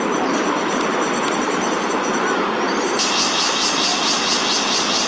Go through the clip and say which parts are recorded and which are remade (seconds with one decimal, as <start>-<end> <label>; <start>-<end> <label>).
0.0-5.1 recorded